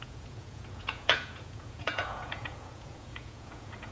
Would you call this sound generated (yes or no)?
yes